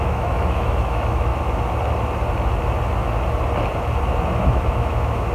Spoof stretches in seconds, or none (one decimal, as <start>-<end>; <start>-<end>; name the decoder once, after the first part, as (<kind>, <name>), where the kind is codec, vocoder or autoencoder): 0.0-1.3 (autoencoder, DAC-VAE); 4.5-5.3